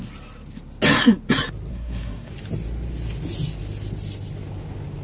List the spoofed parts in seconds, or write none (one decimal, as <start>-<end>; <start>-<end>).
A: 1.7-2.3